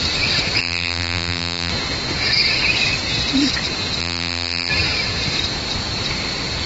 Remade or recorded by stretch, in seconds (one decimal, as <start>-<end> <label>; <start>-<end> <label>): 0.0-0.6 recorded; 0.6-1.7 remade; 1.7-4.0 recorded; 4.0-4.7 remade; 4.7-6.7 recorded